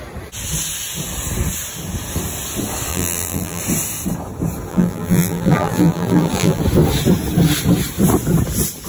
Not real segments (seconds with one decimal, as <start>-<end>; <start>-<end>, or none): 2.9-3.6; 4.7-6.6